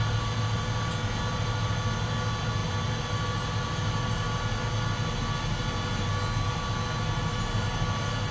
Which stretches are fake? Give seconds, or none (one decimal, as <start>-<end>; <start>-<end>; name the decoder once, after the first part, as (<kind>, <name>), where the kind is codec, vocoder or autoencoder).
none